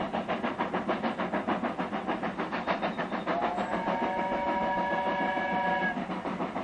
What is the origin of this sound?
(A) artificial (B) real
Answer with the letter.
B